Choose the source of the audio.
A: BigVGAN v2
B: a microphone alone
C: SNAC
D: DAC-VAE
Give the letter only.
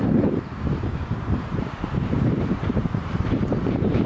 A